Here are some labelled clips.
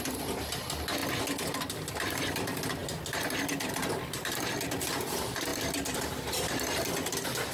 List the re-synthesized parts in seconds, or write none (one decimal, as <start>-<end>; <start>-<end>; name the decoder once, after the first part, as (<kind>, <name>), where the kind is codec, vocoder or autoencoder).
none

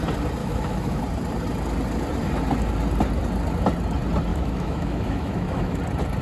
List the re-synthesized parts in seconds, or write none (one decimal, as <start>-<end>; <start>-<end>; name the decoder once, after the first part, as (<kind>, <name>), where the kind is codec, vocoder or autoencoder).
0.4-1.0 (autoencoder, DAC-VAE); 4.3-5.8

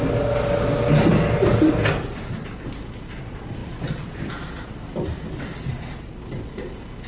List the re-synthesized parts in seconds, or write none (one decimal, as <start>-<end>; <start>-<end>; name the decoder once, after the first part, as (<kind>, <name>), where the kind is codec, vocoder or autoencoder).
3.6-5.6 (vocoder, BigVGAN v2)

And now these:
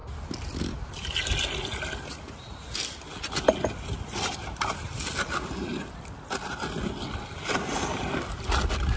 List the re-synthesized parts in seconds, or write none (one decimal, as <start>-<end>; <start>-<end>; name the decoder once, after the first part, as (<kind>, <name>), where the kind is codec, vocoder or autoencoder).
none